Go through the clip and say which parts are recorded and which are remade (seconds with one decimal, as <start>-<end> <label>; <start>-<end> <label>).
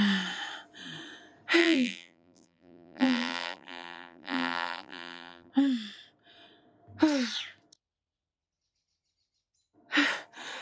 0.0-1.6 recorded; 1.6-5.5 remade; 5.5-10.6 recorded